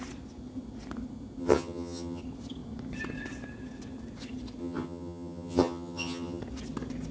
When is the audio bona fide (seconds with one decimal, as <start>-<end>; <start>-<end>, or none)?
0.0-1.4; 2.2-4.6; 6.4-7.1